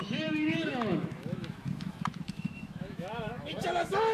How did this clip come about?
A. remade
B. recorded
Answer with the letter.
A